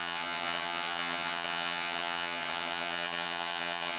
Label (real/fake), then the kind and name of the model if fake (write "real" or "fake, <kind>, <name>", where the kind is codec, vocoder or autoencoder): fake, vocoder, HiFi-GAN